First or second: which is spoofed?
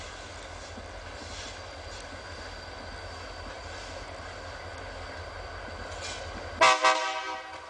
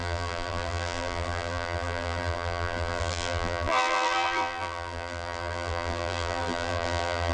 second